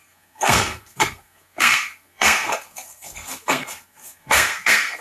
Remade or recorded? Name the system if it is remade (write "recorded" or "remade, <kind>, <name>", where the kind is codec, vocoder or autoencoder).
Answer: remade, codec, SNAC